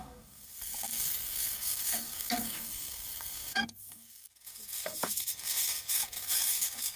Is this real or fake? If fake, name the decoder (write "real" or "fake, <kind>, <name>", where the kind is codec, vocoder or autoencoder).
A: fake, codec, SNAC